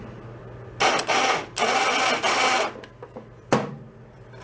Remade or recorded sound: recorded